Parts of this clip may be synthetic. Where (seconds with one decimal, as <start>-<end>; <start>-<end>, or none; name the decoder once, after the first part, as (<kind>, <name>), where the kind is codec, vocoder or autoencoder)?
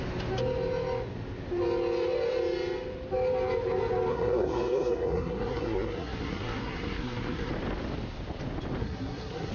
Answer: 4.1-7.5 (codec, SNAC); 8.8-9.5